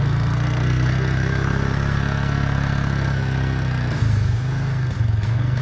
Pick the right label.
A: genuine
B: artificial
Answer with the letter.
B